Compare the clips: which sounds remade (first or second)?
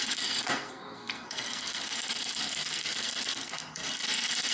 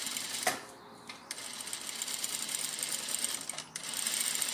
first